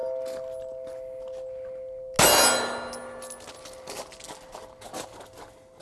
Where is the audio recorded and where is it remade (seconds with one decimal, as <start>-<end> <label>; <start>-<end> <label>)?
0.0-5.8 recorded